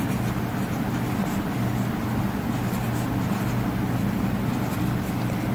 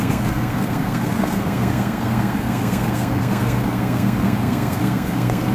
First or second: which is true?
first